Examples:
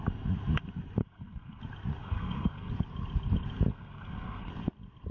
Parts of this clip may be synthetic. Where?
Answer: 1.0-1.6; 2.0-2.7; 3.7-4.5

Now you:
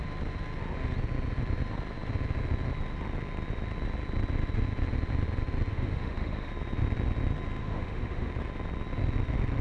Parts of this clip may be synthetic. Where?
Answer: 5.7-6.5; 7.6-8.3

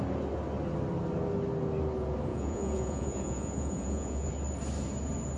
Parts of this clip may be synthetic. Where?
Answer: 2.3-4.3